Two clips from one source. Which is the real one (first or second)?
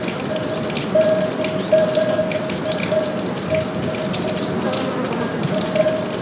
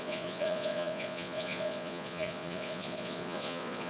first